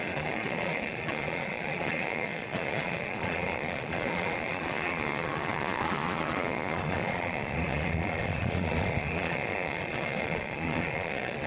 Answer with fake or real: fake